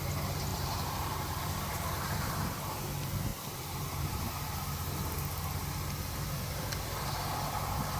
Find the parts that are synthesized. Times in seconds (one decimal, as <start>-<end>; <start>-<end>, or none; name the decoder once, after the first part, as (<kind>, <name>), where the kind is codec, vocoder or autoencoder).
0.5-2.5 (vocoder, BigVGAN v2); 3.3-4.2